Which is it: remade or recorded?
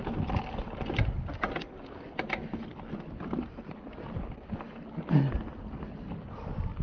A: recorded